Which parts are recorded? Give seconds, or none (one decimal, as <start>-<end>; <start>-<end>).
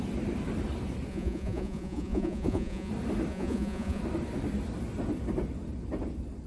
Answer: 0.0-1.1; 2.9-3.3; 4.0-6.5